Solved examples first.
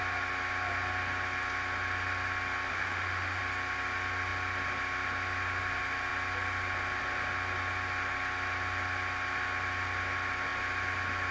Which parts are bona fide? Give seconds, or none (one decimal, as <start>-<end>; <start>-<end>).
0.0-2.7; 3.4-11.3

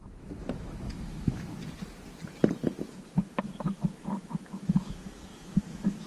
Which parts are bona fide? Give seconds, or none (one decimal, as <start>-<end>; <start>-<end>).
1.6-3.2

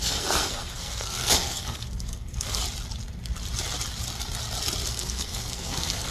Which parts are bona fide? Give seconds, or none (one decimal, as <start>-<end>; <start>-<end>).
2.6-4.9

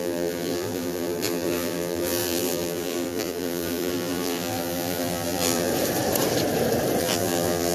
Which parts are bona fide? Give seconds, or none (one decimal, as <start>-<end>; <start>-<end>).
5.7-7.0